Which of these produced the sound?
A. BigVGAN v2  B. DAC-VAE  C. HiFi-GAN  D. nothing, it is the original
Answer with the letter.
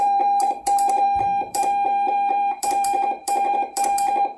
A